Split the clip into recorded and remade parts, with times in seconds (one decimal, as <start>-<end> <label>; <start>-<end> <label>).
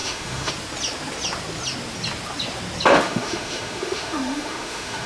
0.0-0.5 remade; 0.5-2.9 recorded; 2.9-5.1 remade